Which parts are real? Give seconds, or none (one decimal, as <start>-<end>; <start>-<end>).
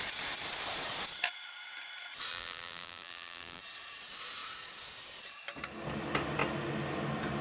0.0-2.3; 3.6-7.4